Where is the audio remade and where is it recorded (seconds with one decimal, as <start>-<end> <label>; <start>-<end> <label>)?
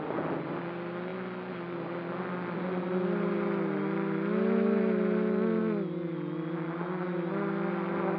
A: 0.0-8.2 recorded